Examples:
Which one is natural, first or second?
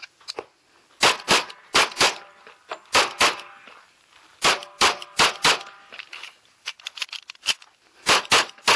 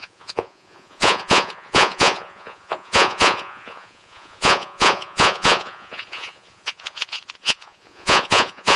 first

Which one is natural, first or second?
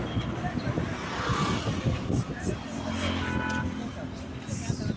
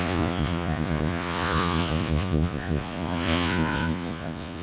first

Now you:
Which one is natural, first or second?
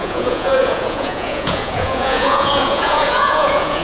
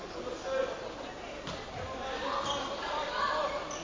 second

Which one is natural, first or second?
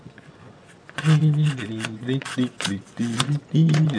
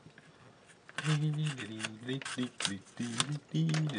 second